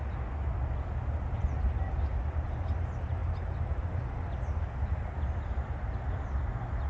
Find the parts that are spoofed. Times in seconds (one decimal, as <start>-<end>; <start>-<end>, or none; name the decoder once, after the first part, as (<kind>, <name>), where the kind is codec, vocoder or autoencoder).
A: none